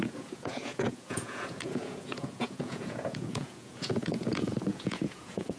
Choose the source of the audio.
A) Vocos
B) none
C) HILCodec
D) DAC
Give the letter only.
A